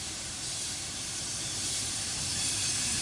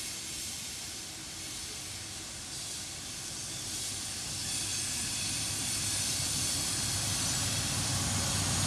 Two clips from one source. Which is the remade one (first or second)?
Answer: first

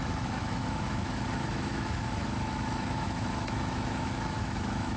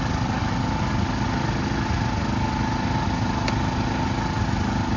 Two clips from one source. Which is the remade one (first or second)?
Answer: first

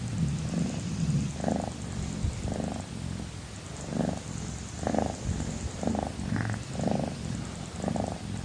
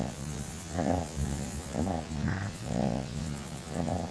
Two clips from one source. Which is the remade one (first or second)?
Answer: second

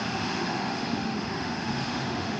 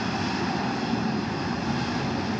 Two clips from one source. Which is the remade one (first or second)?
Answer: first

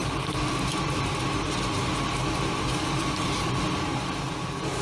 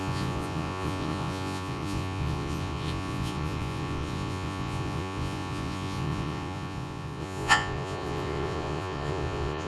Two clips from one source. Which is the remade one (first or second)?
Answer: second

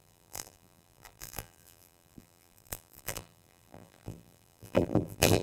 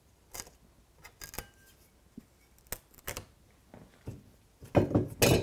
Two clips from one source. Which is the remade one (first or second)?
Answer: first